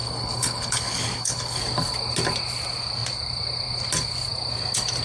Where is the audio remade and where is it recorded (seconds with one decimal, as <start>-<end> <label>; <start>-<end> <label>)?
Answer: 0.0-1.6 remade; 1.6-5.0 recorded